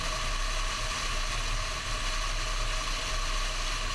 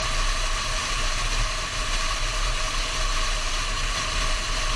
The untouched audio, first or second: first